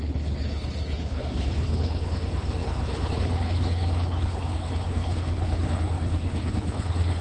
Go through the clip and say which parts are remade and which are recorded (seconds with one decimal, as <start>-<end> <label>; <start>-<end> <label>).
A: 0.0-7.2 remade